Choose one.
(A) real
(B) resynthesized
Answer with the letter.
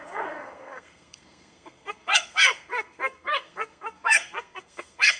B